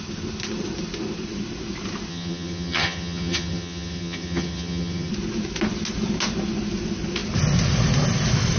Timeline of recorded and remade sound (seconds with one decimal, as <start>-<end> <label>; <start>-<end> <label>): 0.0-2.1 recorded; 2.1-5.1 remade; 5.1-8.6 recorded